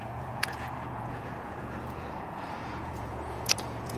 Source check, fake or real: fake